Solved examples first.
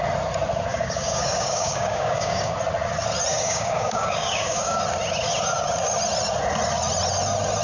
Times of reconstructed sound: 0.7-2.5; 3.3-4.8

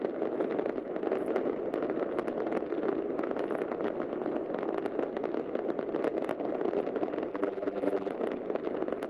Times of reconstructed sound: 7.3-8.1